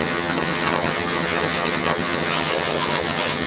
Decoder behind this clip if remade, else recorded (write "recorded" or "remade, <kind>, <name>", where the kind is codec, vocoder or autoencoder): remade, vocoder, HiFi-GAN